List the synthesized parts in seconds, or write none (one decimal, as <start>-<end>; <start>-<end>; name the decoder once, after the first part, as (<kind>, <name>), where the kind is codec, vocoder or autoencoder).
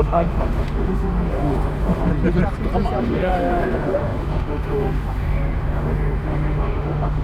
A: 0.0-2.1 (autoencoder, DAC-VAE); 3.0-7.2